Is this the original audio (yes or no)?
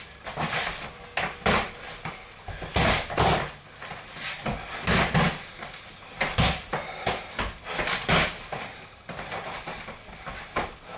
yes